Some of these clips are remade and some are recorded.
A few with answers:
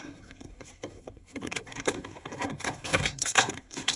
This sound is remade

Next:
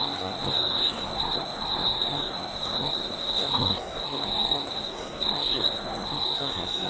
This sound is remade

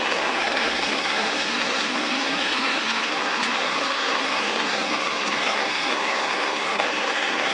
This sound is remade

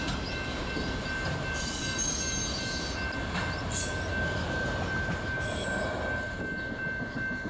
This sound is recorded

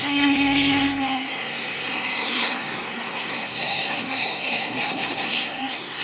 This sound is remade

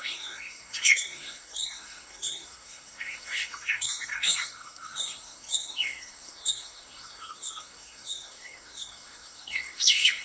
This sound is remade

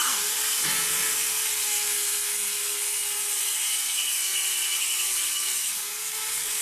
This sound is remade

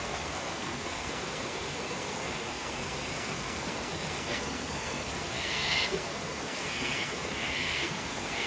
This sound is remade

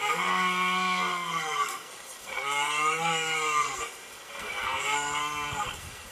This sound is remade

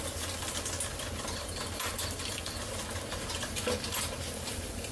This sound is recorded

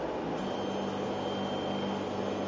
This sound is recorded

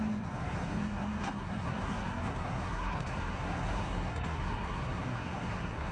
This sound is remade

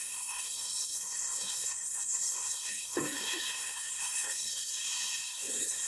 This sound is remade